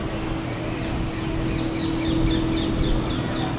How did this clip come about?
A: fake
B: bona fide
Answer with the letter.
B